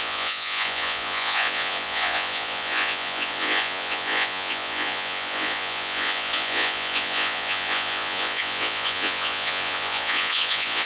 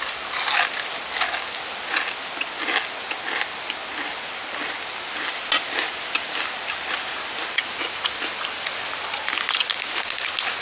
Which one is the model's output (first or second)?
first